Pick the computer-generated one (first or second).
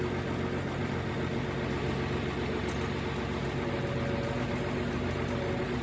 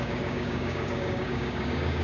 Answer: second